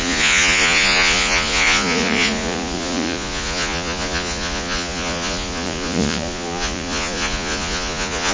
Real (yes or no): no